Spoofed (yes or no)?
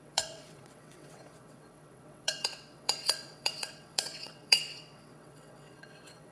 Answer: yes